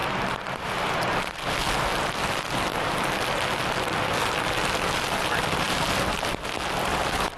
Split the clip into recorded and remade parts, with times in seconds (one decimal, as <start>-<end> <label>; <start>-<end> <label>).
0.0-2.7 recorded; 2.7-7.4 remade